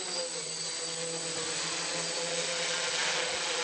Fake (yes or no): no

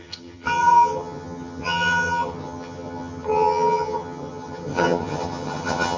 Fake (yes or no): yes